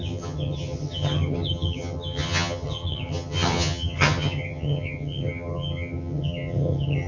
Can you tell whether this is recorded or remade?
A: remade